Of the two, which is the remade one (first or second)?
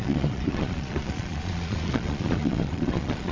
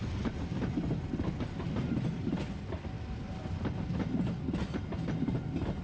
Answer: first